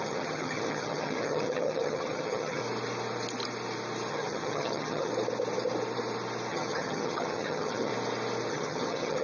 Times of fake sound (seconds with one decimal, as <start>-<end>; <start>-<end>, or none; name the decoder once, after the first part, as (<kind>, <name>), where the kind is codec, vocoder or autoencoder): 0.0-2.6 (vocoder, HiFi-GAN); 4.1-5.1; 6.5-7.9; 8.5-9.2